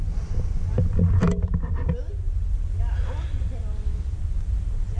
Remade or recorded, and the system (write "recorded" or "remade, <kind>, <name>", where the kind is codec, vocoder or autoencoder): recorded